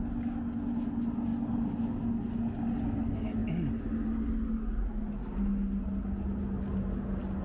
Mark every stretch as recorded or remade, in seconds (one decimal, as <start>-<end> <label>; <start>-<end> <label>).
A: 0.0-7.4 recorded